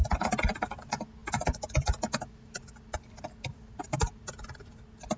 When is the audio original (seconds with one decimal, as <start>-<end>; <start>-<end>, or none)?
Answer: 0.0-5.2